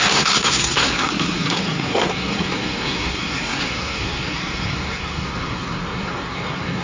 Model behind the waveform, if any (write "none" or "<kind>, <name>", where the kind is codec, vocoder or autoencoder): codec, SNAC